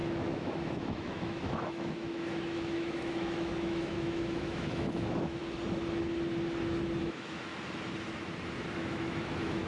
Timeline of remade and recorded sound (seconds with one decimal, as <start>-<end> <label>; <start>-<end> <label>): 0.0-5.4 remade; 5.4-7.0 recorded; 7.0-7.5 remade; 7.5-8.7 recorded; 8.7-9.7 remade